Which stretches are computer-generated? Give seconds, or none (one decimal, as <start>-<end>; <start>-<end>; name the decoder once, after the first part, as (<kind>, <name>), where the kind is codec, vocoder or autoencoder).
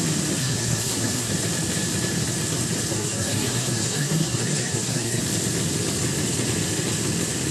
0.4-1.3 (codec, SNAC); 2.9-5.2